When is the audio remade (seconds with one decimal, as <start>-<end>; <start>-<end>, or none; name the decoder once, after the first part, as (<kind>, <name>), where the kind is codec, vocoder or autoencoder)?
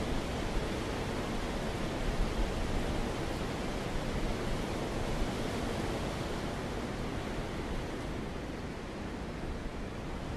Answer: none